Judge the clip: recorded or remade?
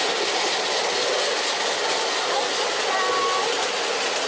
recorded